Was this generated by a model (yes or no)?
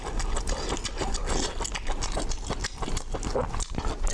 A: no